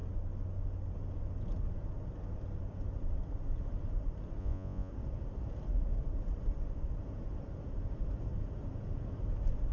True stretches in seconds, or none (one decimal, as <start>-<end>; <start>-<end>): 0.0-4.4; 4.9-9.7